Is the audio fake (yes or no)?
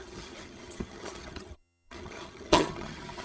yes